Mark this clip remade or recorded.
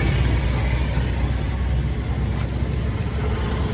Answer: recorded